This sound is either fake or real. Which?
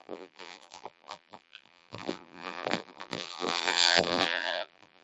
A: fake